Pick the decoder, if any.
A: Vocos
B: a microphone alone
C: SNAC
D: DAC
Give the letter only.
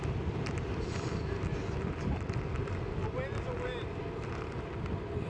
B